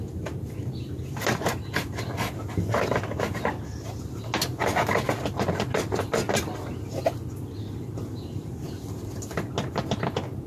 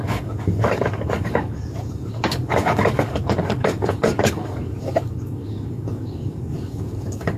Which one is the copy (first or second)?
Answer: second